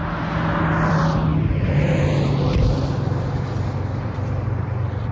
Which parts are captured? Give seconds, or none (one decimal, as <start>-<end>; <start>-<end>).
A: 0.0-0.6